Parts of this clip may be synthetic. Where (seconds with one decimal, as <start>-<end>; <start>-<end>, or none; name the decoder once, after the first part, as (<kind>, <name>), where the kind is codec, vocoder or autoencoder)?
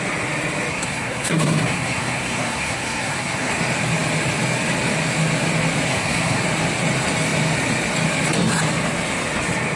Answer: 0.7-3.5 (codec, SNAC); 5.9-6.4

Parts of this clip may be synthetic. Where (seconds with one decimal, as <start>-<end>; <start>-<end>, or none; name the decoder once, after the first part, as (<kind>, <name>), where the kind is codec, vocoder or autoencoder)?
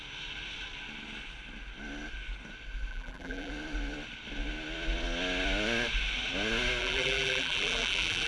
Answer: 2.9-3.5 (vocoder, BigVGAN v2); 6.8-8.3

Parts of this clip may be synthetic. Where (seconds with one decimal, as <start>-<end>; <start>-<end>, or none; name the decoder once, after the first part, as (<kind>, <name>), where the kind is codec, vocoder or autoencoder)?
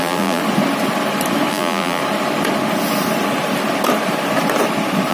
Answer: 0.0-0.4 (vocoder, BigVGAN v2); 1.5-2.0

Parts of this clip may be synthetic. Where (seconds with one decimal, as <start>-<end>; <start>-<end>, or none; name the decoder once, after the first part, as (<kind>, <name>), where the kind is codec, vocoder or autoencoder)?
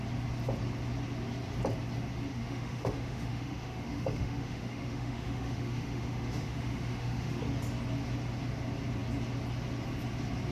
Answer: 2.3-7.4 (autoencoder, DAC-VAE)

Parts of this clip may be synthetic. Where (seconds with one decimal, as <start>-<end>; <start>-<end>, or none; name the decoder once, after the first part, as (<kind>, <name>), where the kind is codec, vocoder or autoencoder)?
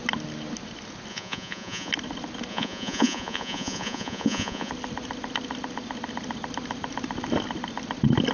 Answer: 1.1-1.9 (vocoder, Vocos); 2.5-4.7